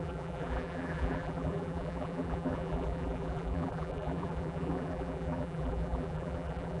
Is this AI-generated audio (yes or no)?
yes